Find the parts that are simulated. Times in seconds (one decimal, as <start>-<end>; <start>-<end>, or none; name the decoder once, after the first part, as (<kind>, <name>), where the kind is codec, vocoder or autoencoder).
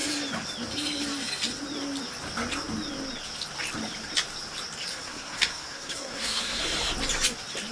4.9-6.6 (codec, SNAC)